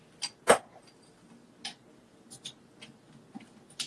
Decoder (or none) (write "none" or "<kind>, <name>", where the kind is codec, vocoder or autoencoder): none